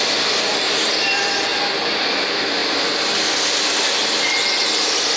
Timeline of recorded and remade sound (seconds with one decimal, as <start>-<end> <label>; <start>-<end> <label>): 0.0-5.2 recorded